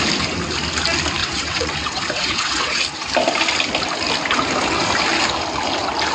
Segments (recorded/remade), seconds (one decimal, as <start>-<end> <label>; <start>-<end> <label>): 0.0-1.2 recorded; 1.2-2.8 remade; 2.8-6.1 recorded